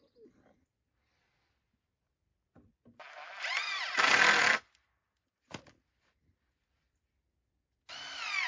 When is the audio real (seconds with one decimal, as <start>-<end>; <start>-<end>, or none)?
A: 0.0-8.5